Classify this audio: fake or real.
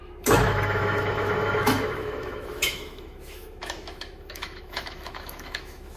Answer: fake